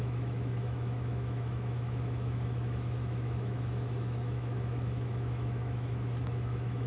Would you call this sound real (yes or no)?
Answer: no